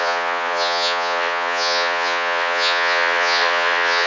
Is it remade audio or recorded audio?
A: remade